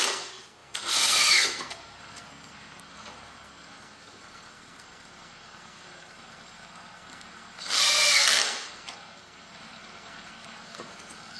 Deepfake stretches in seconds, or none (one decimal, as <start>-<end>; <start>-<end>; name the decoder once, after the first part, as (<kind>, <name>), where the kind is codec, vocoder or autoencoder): 0.0-11.4 (codec, SNAC)